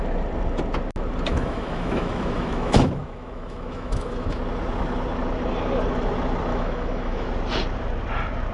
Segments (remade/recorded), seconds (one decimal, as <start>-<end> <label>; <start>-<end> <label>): 0.0-1.3 recorded; 1.3-4.4 remade; 4.4-6.5 recorded; 6.5-7.3 remade; 7.3-8.5 recorded

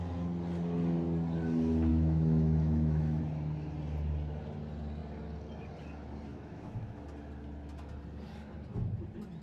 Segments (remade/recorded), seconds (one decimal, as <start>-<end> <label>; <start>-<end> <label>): 0.0-1.9 recorded; 1.9-3.2 remade; 3.2-6.3 recorded; 6.3-7.0 remade; 7.0-9.4 recorded

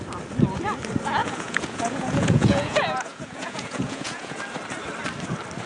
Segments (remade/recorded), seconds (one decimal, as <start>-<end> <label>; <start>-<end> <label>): 0.0-1.2 recorded; 1.2-4.4 remade; 4.4-5.7 recorded

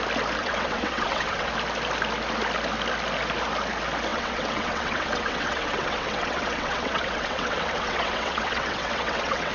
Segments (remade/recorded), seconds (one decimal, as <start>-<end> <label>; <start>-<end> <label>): 0.0-0.4 recorded; 0.4-1.5 remade; 1.5-4.1 recorded; 4.1-9.5 remade

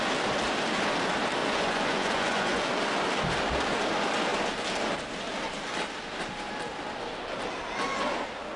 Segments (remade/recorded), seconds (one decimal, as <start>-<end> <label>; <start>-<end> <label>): 0.0-1.4 recorded; 1.4-2.6 remade; 2.6-8.6 recorded